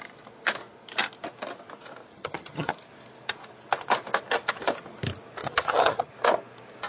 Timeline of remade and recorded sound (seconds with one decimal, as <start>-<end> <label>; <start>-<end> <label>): 0.0-2.1 recorded; 2.1-2.7 remade; 2.7-5.4 recorded; 5.4-6.1 remade; 6.1-6.9 recorded